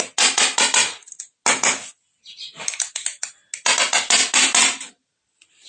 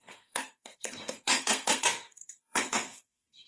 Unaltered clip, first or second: first